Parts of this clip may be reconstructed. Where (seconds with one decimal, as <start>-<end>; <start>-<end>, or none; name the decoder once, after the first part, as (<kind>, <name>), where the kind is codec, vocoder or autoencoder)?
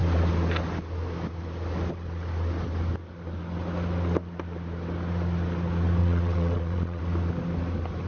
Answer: 6.0-7.0 (vocoder, WaveNeXt)